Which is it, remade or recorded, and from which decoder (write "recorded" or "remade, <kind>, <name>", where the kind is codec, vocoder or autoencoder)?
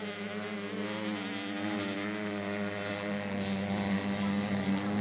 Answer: recorded